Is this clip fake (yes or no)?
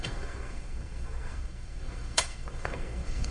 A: yes